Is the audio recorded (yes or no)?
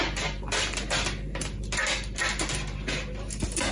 yes